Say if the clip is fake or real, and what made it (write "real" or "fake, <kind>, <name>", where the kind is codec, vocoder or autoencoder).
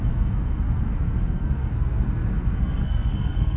fake, codec, SNAC